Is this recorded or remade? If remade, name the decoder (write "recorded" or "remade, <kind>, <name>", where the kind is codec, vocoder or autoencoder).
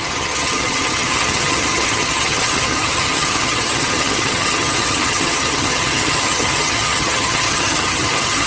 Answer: remade, vocoder, HiFi-GAN